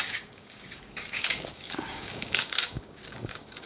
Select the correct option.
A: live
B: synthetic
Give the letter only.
B